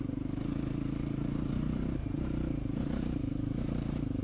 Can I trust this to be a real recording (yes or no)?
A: no